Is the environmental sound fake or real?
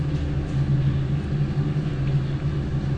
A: real